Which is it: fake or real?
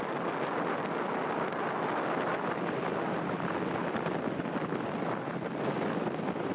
real